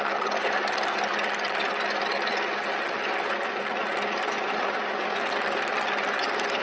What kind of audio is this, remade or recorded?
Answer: recorded